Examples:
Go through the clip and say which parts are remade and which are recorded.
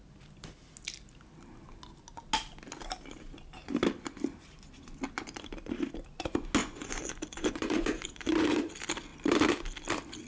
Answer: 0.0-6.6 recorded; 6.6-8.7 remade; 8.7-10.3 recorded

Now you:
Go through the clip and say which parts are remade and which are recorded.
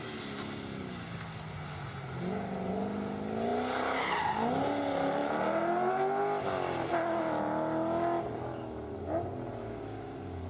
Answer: 0.0-10.5 recorded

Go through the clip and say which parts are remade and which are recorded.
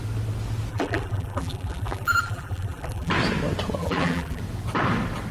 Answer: 0.0-0.7 recorded; 0.7-3.1 remade; 3.1-3.8 recorded; 3.8-4.4 remade; 4.4-5.3 recorded